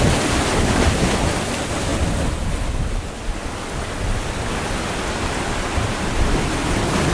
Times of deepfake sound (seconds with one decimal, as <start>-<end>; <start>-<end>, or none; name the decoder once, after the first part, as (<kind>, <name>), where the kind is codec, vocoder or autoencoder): none